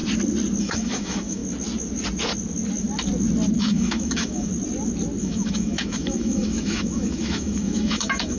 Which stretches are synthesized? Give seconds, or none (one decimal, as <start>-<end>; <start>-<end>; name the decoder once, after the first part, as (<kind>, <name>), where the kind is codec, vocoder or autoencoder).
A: 0.6-1.4 (autoencoder, DAC-VAE); 3.6-4.5; 5.2-8.4